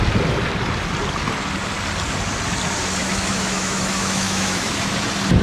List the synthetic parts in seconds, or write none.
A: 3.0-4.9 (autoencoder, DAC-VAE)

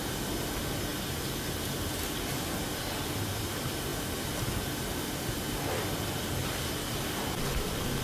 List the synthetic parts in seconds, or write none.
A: none

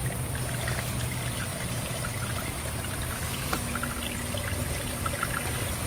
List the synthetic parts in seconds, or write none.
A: none